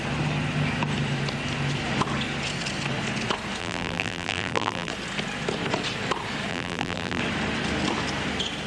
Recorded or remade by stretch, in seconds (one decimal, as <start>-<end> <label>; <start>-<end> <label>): 0.0-3.6 recorded; 3.6-4.9 remade; 4.9-6.5 recorded; 6.5-7.2 remade; 7.2-8.7 recorded